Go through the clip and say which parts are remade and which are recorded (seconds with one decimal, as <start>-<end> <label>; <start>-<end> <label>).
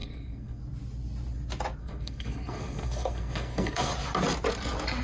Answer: 0.0-0.6 remade; 0.6-1.8 recorded; 1.8-3.9 remade; 3.9-5.0 recorded